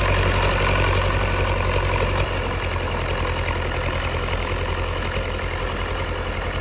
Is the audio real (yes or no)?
yes